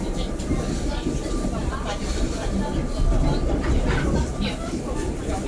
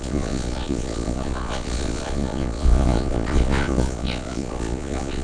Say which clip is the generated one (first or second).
second